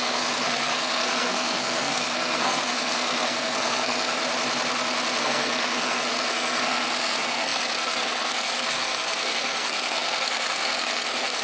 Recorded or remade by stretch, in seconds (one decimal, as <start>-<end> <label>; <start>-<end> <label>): 0.0-4.2 remade; 4.2-5.2 recorded; 5.2-11.4 remade